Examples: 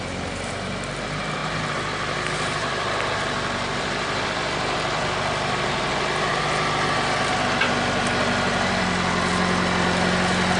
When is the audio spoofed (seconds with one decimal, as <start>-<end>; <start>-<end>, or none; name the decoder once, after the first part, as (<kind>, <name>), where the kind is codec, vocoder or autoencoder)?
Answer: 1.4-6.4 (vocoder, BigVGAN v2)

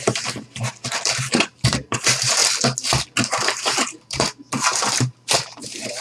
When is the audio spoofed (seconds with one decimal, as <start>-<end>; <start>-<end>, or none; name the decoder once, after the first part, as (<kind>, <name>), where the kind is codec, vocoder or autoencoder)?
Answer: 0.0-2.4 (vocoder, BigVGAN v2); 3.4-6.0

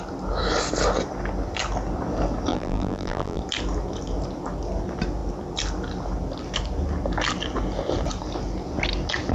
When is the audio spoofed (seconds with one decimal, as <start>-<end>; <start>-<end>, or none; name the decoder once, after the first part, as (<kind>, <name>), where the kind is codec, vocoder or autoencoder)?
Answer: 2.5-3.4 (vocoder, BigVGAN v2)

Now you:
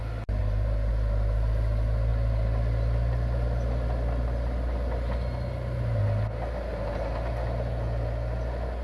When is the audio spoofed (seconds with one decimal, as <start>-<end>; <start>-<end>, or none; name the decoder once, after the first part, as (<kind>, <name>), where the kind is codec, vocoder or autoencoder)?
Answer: 0.4-0.9 (vocoder, BigVGAN v2)